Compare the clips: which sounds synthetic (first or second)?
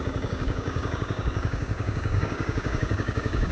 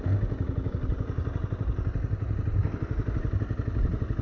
first